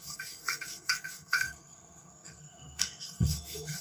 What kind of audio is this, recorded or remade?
remade